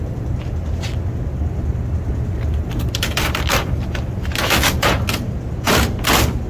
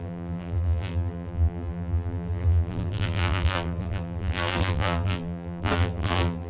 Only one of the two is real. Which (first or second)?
first